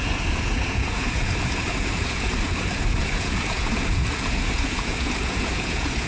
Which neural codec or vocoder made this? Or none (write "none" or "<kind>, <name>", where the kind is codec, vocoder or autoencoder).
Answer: vocoder, Vocos